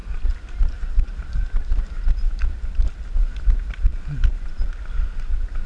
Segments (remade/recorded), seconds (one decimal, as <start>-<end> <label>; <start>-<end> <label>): 0.0-5.7 recorded